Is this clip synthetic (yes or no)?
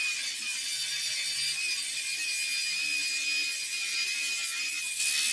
no